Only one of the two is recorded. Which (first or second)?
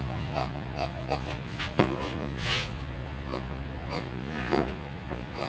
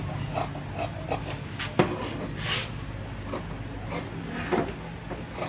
second